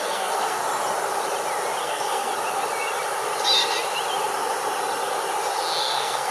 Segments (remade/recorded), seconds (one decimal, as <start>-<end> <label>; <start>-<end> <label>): 0.0-0.6 remade; 0.6-1.8 recorded; 1.8-2.3 remade; 2.3-5.8 recorded; 5.8-6.3 remade